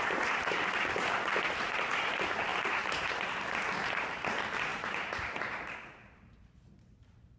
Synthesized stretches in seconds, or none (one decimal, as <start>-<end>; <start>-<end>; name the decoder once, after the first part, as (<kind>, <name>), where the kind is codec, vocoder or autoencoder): 2.5-3.1 (vocoder, BigVGAN v2); 4.7-5.6